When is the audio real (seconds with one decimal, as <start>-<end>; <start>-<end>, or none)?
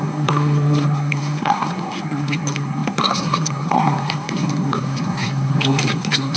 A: none